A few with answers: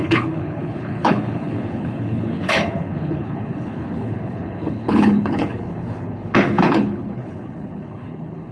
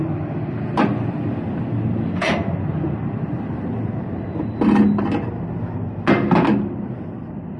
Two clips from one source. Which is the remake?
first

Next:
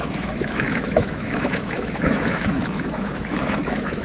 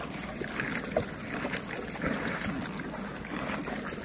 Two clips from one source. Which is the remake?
first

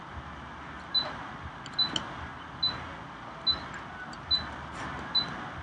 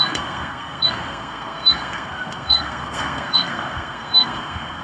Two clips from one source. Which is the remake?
second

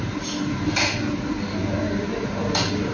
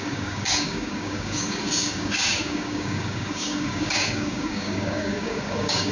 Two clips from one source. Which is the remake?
second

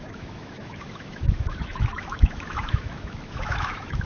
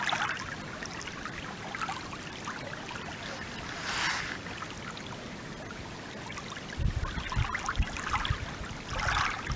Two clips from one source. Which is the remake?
first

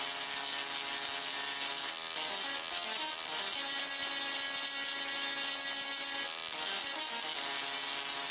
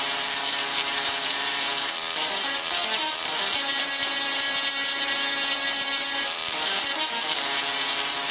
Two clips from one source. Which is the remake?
second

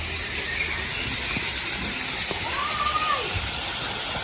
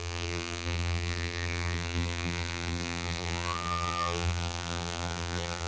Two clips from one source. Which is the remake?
second